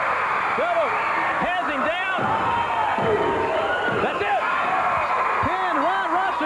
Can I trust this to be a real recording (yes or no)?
yes